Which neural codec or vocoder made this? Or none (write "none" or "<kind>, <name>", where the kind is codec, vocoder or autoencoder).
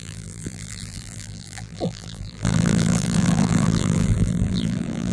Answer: vocoder, BigVGAN v2